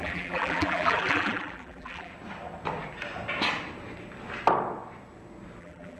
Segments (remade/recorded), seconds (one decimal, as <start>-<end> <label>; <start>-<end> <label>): 0.0-2.1 remade; 2.1-5.6 recorded; 5.6-6.0 remade

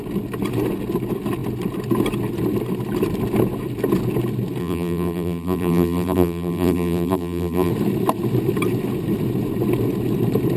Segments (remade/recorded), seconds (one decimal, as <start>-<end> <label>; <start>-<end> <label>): 0.0-4.6 recorded; 4.6-7.7 remade; 7.7-10.6 recorded

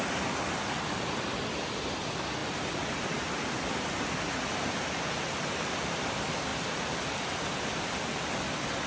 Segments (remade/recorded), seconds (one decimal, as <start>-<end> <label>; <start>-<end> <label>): 0.0-2.4 recorded; 2.4-3.3 remade; 3.3-6.5 recorded; 6.5-8.3 remade; 8.3-8.9 recorded

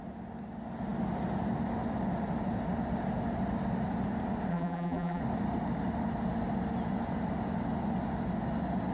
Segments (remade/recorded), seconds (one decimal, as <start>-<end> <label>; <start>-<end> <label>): 0.0-4.5 recorded; 4.5-5.2 remade; 5.2-8.9 recorded

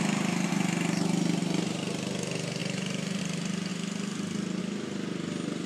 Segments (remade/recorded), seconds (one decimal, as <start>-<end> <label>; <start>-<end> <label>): 0.0-1.4 recorded; 1.4-1.9 remade; 1.9-2.6 recorded; 2.6-3.2 remade; 3.2-5.7 recorded

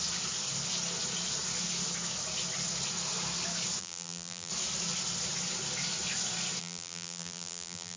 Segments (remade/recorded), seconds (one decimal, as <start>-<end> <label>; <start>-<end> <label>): 0.0-3.8 recorded; 3.8-4.5 remade; 4.5-6.6 recorded; 6.6-8.0 remade